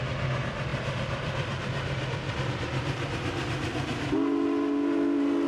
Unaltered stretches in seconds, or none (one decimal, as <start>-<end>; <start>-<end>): 0.0-0.7; 2.5-5.5